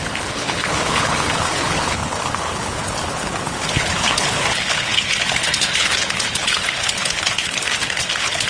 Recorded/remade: remade